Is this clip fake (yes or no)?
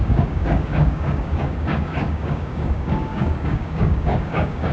yes